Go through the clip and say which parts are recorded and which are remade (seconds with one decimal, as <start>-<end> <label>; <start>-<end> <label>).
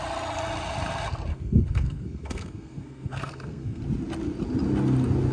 0.0-1.3 recorded; 1.3-3.8 remade; 3.8-5.3 recorded